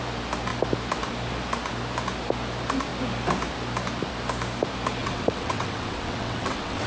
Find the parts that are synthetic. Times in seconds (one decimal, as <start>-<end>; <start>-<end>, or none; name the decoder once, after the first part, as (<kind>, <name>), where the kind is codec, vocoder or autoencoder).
5.0-6.9 (vocoder, WaveNeXt)